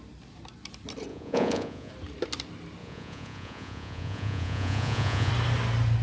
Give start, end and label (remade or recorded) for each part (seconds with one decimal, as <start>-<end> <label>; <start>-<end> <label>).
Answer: 0.0-1.1 recorded; 1.1-1.9 remade; 1.9-2.8 recorded; 2.8-5.3 remade; 5.3-6.0 recorded